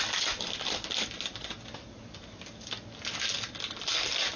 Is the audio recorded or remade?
recorded